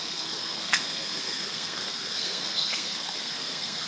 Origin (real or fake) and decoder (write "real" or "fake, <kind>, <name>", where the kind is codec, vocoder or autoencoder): fake, codec, SNAC